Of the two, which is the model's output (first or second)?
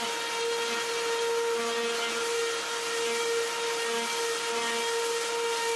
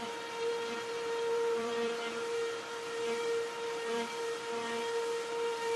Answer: second